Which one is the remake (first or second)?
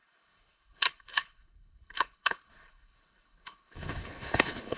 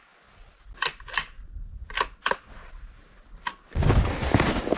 first